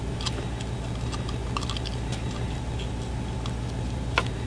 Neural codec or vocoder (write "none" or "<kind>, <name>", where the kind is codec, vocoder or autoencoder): none